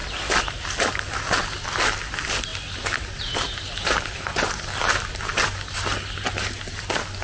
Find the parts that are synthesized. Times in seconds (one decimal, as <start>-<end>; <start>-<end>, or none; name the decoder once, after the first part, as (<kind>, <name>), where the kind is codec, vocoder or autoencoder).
0.0-0.5 (vocoder, BigVGAN v2); 2.5-5.1